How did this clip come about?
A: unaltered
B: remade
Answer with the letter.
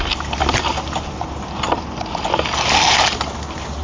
A